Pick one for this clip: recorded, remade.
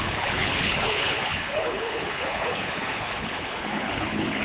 remade